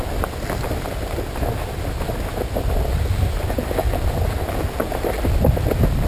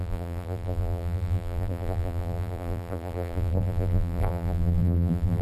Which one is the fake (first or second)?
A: second